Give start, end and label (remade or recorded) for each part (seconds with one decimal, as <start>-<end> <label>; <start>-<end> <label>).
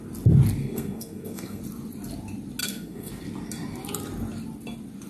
0.0-0.6 recorded; 0.6-1.6 remade; 1.6-2.6 recorded; 2.6-3.1 remade; 3.1-5.1 recorded